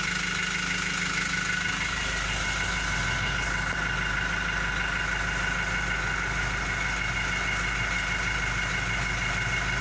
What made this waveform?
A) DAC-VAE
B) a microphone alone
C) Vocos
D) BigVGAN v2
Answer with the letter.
B